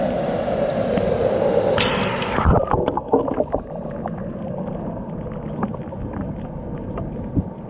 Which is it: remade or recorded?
recorded